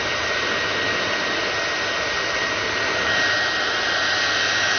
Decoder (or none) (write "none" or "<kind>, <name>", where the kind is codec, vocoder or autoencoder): none